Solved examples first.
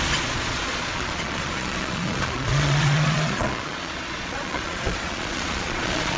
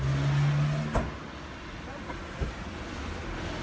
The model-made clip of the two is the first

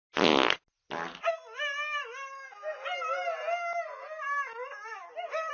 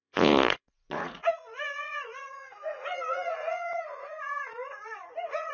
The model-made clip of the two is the second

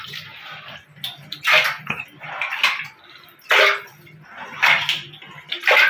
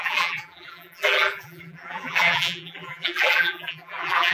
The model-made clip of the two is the second